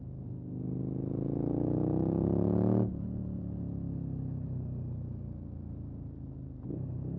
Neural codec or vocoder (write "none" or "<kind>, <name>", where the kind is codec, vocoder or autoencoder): none